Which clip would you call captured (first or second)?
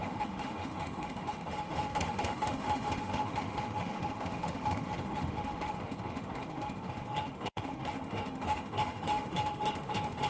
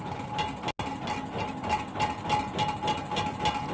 second